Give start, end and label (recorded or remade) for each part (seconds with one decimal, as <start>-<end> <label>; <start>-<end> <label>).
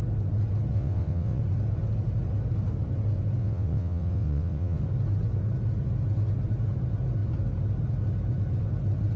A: 0.0-0.7 recorded; 0.7-1.4 remade; 1.4-3.4 recorded; 3.4-4.8 remade; 4.8-9.2 recorded